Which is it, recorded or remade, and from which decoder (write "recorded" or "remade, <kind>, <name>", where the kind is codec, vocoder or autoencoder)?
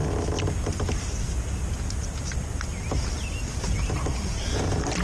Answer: recorded